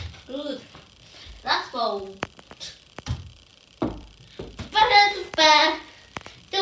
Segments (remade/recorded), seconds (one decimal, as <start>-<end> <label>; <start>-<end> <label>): 0.0-1.8 remade; 1.8-2.6 recorded; 2.6-5.2 remade; 5.2-6.6 recorded

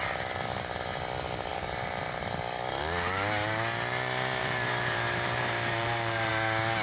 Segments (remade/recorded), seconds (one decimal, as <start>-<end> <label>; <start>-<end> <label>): 0.0-1.5 recorded; 1.5-2.0 remade; 2.0-4.4 recorded; 4.4-6.3 remade; 6.3-6.8 recorded

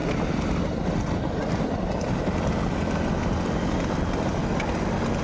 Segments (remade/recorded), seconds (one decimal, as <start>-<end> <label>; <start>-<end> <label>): 0.0-5.2 recorded

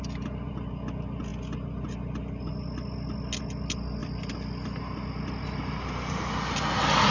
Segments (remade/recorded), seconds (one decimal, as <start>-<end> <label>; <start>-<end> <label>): 0.0-7.1 recorded

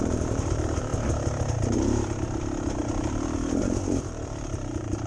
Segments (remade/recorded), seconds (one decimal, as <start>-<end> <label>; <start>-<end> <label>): 0.0-0.9 remade; 0.9-4.0 recorded; 4.0-5.1 remade

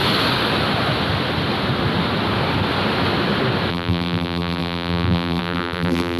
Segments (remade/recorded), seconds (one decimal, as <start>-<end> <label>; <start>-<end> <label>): 0.0-3.7 recorded; 3.7-6.2 remade

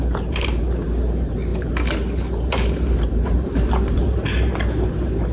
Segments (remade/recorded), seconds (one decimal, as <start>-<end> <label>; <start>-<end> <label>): 0.0-5.3 remade